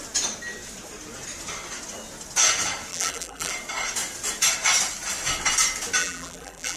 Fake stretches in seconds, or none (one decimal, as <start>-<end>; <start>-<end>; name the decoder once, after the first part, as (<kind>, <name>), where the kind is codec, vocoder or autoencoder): 2.9-3.5 (vocoder, BigVGAN v2); 6.0-6.8